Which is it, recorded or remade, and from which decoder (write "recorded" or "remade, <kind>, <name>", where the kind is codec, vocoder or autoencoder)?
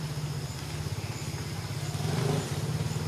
recorded